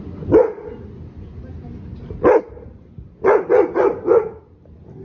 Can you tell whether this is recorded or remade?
recorded